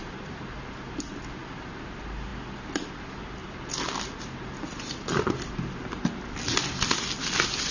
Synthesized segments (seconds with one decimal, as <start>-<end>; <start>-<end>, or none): none